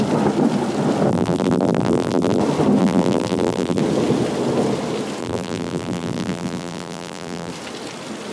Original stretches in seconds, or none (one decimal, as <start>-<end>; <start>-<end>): 0.0-1.1; 2.4-2.8; 3.8-5.2; 7.5-8.3